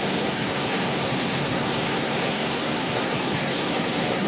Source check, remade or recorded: remade